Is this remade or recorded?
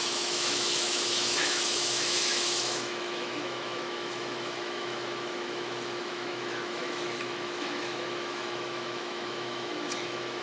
remade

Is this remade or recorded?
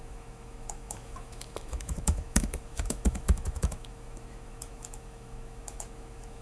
remade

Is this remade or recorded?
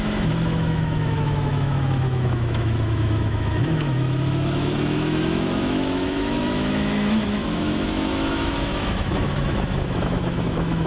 remade